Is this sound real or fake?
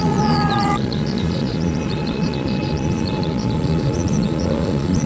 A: fake